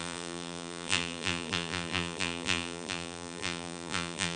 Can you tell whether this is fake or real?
fake